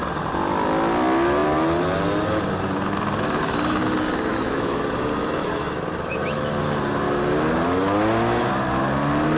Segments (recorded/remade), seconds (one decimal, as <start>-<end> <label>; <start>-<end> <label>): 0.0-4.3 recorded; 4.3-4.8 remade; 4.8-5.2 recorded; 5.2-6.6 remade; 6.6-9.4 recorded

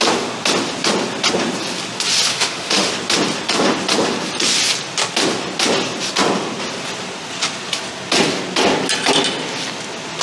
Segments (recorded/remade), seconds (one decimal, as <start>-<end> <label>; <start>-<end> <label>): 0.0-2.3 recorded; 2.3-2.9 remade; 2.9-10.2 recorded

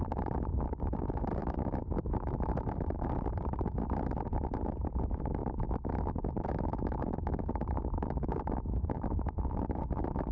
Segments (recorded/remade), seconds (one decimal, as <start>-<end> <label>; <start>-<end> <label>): 0.0-1.4 recorded; 1.4-3.1 remade; 3.1-5.4 recorded; 5.4-9.1 remade; 9.1-10.3 recorded